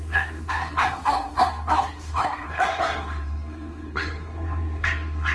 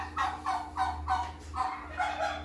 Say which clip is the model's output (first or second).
first